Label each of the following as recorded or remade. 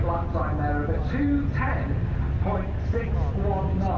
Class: recorded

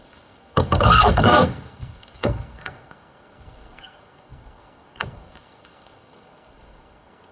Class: remade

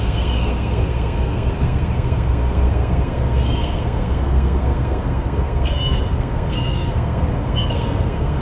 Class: remade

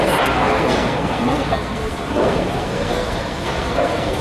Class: remade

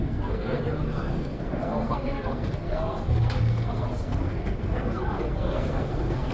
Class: remade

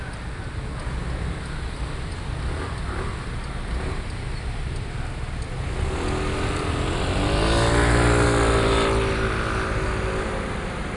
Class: recorded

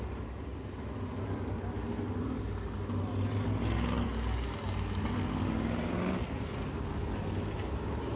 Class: recorded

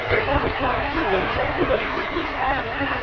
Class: remade